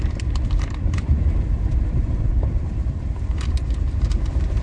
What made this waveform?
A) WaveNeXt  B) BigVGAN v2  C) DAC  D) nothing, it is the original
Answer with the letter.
B